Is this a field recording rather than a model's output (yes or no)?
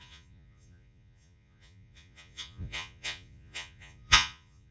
no